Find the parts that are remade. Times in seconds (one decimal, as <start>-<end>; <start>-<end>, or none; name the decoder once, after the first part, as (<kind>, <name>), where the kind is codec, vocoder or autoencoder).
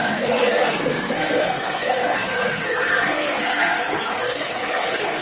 0.0-5.2 (codec, SNAC)